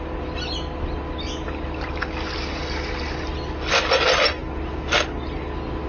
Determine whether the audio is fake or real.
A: real